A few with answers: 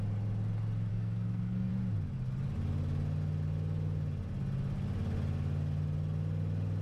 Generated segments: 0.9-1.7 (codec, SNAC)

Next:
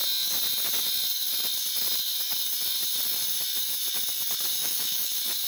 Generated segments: 4.6-5.1 (autoencoder, DAC-VAE)

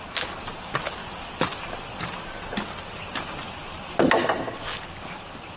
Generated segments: none

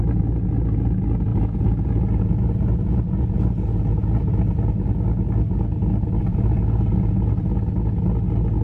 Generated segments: 1.3-4.9 (vocoder, Vocos); 6.2-7.3

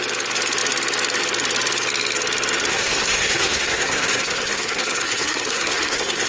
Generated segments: 2.7-6.3 (codec, SNAC)

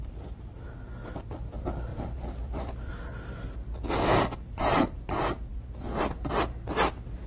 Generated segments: 1.9-2.9 (vocoder, BigVGAN v2)

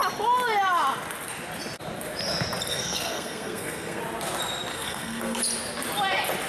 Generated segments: 2.7-4.0 (codec, SNAC); 4.7-5.4

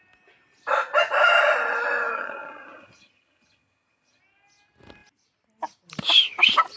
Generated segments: 2.1-4.2 (vocoder, HiFi-GAN)